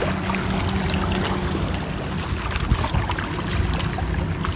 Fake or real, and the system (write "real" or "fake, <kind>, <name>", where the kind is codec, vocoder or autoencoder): real